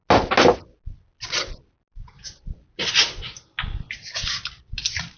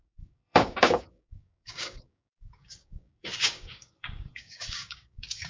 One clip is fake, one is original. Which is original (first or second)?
first